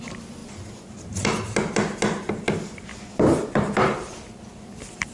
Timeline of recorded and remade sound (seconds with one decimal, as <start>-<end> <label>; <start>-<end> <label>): 0.0-5.1 recorded